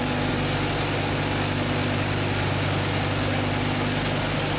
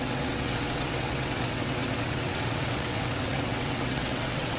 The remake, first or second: second